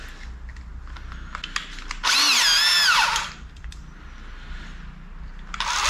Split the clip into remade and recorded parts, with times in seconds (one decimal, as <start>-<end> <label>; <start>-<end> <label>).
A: 0.0-5.9 recorded